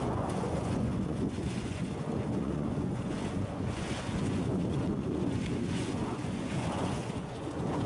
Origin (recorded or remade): remade